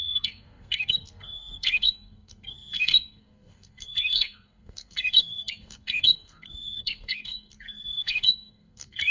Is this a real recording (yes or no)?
no